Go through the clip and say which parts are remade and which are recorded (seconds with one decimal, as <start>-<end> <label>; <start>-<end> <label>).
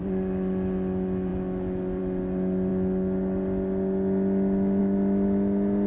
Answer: 0.0-5.9 recorded